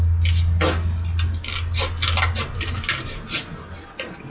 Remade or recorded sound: recorded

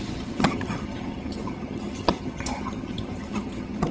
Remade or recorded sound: remade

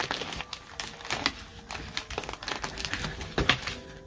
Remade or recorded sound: recorded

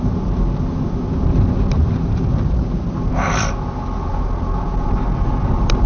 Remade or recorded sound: recorded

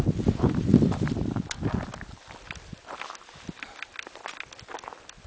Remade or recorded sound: recorded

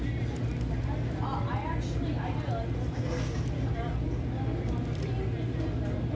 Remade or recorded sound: recorded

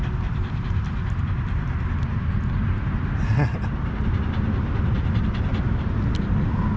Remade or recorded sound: recorded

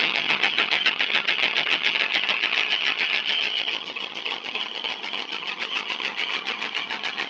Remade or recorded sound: remade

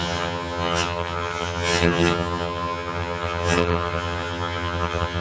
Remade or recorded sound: remade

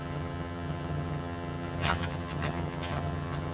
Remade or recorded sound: remade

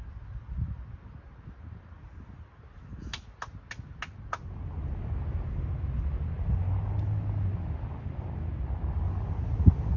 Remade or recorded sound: recorded